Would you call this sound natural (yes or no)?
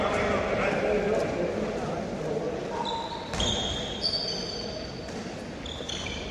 yes